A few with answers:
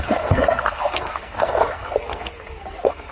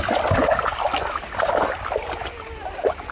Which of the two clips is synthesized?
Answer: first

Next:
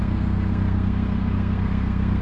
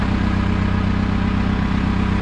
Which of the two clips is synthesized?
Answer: first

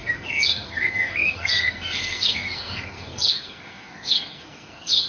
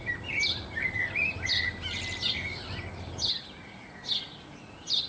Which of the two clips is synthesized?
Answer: first